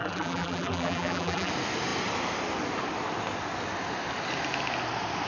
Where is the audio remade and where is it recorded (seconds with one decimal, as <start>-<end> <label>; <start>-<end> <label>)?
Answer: 0.0-1.5 remade; 1.5-5.3 recorded